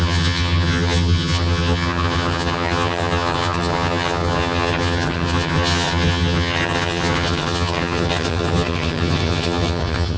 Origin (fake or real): fake